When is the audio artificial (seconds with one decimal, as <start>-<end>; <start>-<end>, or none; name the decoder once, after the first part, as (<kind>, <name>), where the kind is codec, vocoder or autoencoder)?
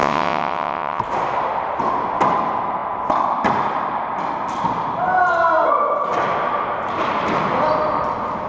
0.0-1.0 (vocoder, WaveNeXt)